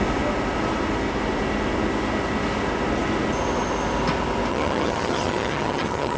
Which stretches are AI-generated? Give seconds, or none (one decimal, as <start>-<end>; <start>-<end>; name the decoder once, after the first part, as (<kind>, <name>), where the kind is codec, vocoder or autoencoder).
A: 4.5-6.2 (vocoder, HiFi-GAN)